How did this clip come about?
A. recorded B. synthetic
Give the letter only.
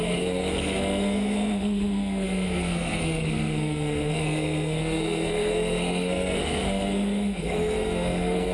B